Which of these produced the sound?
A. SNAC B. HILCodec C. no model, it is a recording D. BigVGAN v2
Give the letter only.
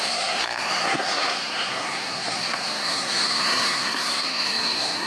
A